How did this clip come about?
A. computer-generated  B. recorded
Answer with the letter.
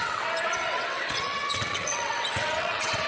A